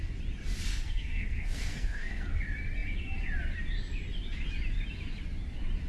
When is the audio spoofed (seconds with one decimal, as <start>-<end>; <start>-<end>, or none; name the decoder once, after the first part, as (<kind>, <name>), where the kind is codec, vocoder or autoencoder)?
0.7-2.4 (codec, SNAC)